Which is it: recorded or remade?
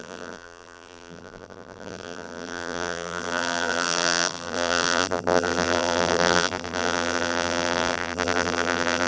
remade